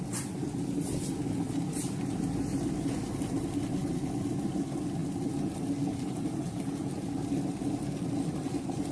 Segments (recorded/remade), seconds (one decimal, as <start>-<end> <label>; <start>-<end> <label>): 0.0-8.9 recorded